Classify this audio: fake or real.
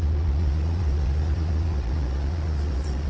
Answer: fake